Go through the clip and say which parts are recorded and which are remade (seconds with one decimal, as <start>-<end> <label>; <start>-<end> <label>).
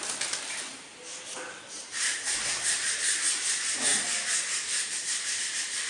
0.0-1.8 recorded; 1.8-2.4 remade; 2.4-5.9 recorded